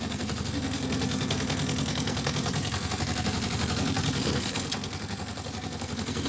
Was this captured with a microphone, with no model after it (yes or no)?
no